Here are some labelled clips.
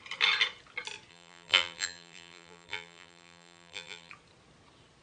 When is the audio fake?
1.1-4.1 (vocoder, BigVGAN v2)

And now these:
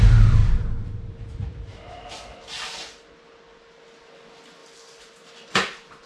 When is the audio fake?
0.4-1.7 (vocoder, BigVGAN v2); 4.6-6.1

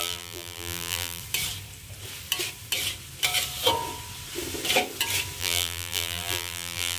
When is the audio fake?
0.0-1.2 (vocoder, BigVGAN v2); 5.4-7.0

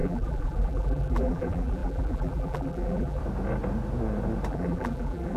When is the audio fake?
0.0-3.2 (vocoder, BigVGAN v2); 4.5-5.4

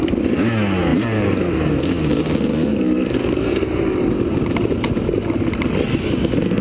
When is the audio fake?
0.9-1.8 (vocoder, BigVGAN v2); 2.7-4.1

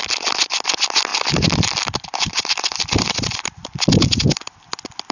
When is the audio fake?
1.1-4.2 (vocoder, BigVGAN v2)

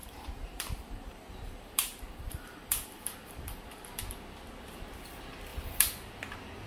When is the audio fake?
0.0-4.0 (vocoder, BigVGAN v2); 5.5-6.1

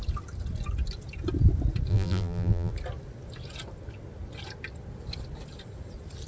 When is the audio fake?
1.9-2.7 (vocoder, BigVGAN v2)